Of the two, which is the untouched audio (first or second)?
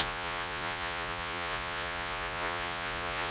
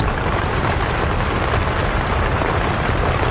second